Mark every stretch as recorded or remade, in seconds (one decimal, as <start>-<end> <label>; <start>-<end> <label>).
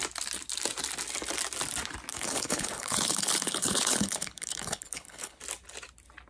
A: 0.0-2.1 recorded; 2.1-5.4 remade; 5.4-6.3 recorded